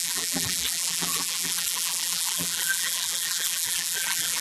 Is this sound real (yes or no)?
no